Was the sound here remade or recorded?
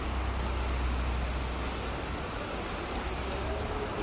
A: recorded